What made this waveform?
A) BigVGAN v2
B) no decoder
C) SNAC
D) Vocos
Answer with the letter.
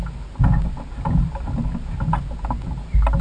B